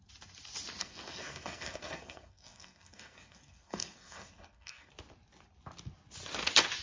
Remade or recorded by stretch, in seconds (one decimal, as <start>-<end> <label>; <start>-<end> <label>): 0.0-0.8 recorded; 0.8-4.9 remade; 4.9-6.8 recorded